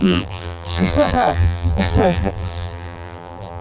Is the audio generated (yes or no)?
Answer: yes